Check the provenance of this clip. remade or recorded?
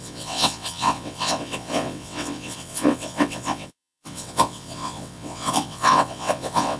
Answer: remade